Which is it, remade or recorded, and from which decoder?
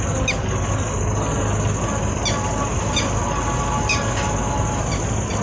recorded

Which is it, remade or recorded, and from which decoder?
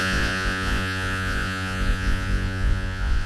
remade, vocoder, Vocos